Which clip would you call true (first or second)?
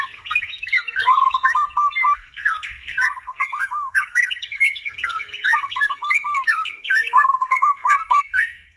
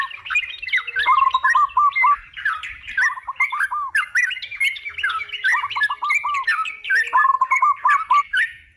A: second